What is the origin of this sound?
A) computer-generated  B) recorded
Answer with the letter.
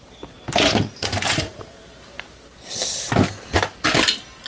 B